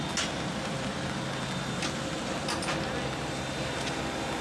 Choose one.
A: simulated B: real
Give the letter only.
B